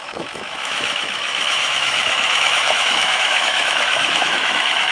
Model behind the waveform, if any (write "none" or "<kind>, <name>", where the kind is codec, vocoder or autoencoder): autoencoder, DAC-VAE